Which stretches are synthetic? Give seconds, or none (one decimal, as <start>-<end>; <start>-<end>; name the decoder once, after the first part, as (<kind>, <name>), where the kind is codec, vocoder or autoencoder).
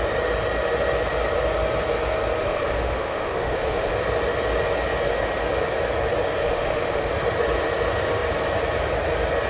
2.4-3.9 (autoencoder, DAC-VAE); 6.4-7.1